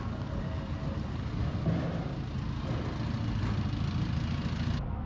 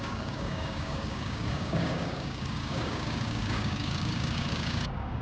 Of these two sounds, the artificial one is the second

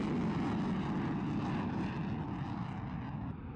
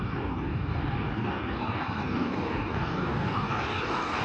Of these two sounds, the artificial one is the second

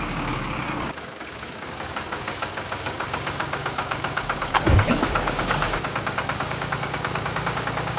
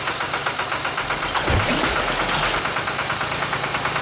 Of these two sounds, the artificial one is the first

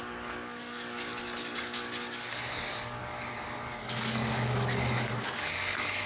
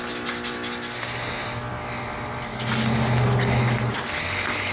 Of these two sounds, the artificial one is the first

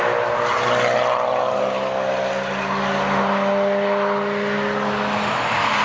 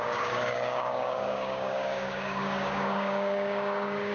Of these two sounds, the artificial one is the second